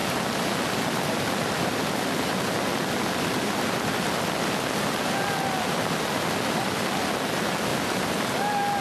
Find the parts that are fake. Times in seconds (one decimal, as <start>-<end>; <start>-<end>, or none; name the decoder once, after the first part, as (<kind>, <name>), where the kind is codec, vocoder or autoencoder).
7.7-8.2 (vocoder, BigVGAN v2)